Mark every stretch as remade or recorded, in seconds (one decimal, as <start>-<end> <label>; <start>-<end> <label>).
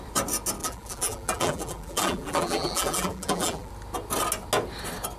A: 0.0-0.6 recorded; 0.6-3.7 remade; 3.7-5.2 recorded